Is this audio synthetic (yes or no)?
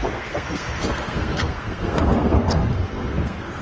yes